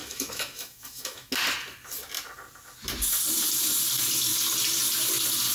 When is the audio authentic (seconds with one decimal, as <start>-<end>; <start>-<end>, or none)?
1.3-5.5